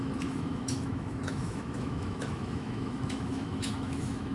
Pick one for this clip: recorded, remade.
remade